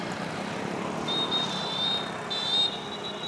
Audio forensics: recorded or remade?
recorded